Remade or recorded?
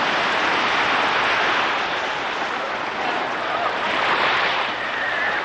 recorded